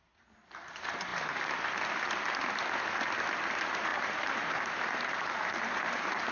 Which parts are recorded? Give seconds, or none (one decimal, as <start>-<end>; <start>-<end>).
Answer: 0.0-3.9